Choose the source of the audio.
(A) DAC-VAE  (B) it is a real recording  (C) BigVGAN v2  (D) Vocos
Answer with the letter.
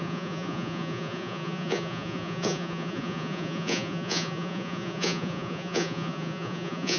D